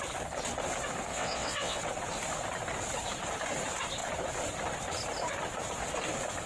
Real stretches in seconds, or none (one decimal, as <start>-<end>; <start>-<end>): 0.0-1.1; 1.8-6.5